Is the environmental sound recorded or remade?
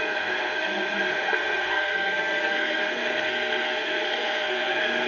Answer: remade